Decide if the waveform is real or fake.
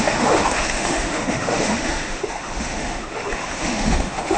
fake